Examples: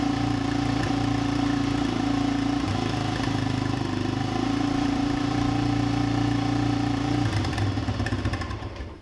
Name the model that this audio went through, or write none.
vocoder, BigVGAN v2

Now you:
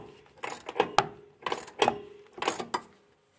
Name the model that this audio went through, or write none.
none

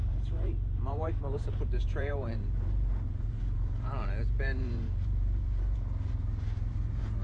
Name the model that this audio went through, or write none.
vocoder, BigVGAN v2